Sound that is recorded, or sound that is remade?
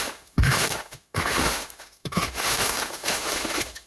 remade